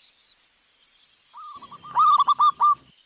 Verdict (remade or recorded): recorded